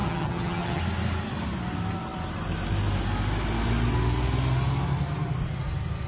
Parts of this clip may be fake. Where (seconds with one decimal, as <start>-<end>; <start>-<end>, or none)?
0.0-0.8